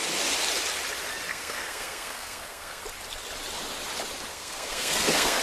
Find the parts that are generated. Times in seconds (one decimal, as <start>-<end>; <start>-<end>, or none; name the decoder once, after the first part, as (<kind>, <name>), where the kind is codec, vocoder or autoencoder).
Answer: 1.3-2.8 (codec, SNAC); 4.3-5.4